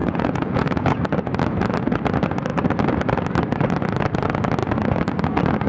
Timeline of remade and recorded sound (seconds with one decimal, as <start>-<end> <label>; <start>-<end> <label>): 0.0-1.0 remade; 1.0-5.7 recorded